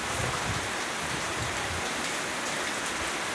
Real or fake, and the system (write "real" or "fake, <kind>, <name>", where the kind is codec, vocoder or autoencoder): real